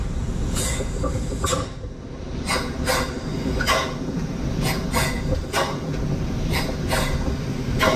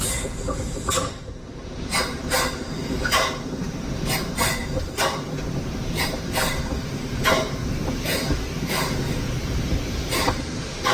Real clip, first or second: first